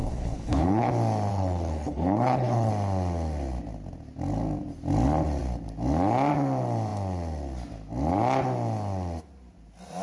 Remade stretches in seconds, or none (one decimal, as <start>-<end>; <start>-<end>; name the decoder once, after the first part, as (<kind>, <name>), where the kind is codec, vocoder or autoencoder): 0.0-0.9 (codec, HILCodec); 1.3-2.7